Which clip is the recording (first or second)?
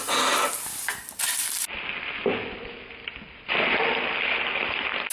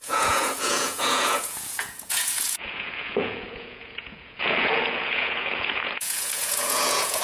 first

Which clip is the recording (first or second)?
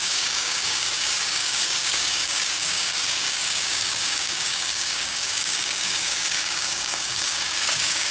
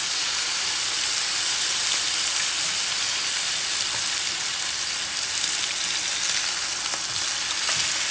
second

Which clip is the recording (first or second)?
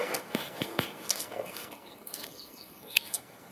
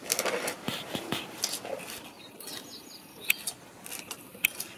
second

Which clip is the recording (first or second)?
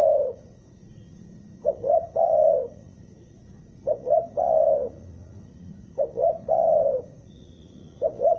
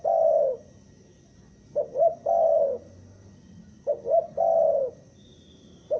second